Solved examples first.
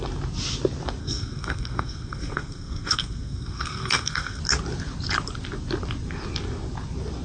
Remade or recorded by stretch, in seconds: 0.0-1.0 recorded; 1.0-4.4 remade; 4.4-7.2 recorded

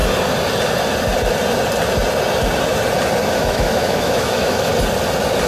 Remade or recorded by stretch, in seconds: 0.0-3.3 recorded; 3.3-4.7 remade; 4.7-5.5 recorded